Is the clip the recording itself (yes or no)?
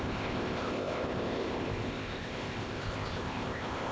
no